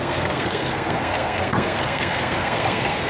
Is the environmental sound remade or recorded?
remade